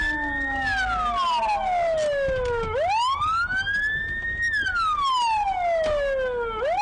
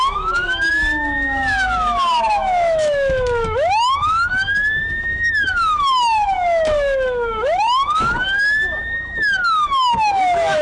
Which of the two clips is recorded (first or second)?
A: first